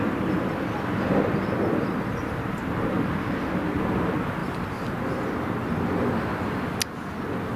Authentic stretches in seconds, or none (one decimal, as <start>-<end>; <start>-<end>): 0.0-7.6